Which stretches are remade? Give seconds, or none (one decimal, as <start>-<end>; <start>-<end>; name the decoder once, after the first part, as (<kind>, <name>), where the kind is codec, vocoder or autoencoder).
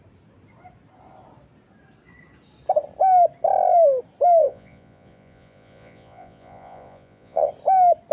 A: 4.4-7.5 (vocoder, Vocos)